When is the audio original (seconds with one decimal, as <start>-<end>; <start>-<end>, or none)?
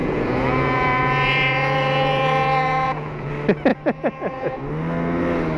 3.3-3.7; 4.6-5.6